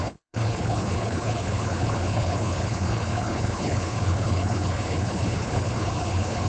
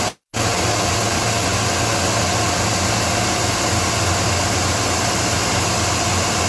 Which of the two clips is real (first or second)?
second